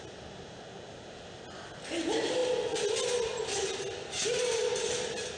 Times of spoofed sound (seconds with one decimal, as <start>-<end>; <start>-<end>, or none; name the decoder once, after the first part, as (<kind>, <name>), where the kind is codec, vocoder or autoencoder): none